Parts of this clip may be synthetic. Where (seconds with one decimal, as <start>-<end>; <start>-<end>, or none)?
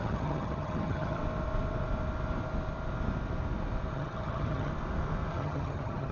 0.0-1.2; 3.9-4.7; 5.3-6.1